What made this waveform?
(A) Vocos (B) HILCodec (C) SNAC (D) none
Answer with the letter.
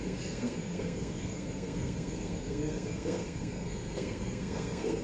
C